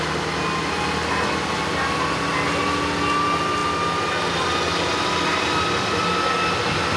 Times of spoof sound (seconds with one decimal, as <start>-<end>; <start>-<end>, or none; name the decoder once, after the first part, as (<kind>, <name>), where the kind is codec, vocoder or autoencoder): none